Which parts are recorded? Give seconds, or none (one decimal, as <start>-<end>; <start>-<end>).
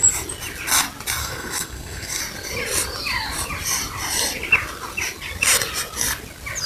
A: 0.0-1.2; 2.2-6.7